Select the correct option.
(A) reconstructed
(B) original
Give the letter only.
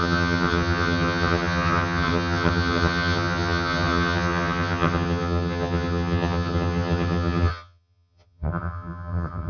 A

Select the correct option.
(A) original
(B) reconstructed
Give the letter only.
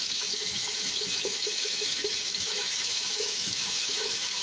B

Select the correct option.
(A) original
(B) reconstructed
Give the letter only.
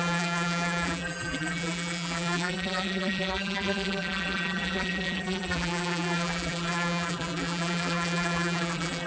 B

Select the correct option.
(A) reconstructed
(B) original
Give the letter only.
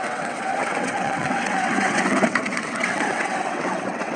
A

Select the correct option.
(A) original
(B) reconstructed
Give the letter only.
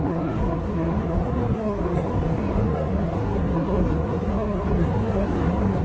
B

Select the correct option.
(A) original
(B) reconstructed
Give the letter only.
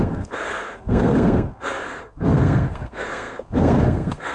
B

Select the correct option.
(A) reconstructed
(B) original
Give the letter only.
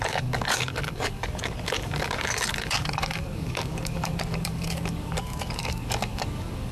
A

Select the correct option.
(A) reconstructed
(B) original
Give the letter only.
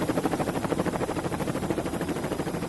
A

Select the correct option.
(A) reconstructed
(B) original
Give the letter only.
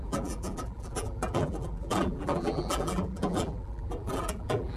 A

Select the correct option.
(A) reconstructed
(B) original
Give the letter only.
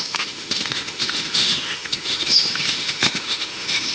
A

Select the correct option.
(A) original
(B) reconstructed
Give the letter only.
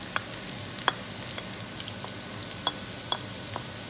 A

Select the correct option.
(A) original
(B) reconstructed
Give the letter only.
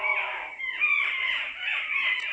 A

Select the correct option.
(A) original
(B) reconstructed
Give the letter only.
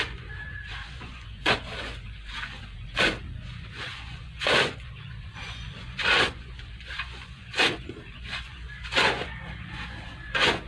B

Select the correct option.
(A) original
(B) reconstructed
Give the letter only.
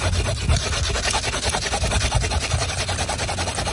A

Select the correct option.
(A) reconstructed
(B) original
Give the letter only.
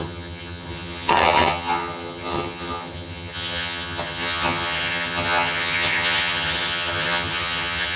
A